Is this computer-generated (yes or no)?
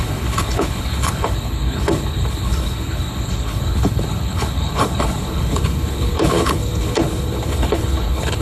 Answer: yes